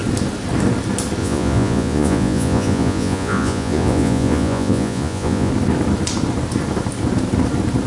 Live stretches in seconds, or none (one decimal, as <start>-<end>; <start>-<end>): 0.0-1.2; 5.5-7.9